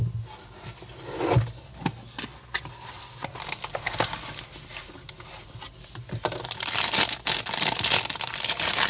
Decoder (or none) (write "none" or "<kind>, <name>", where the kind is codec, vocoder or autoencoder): none